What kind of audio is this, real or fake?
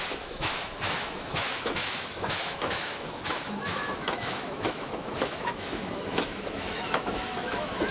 fake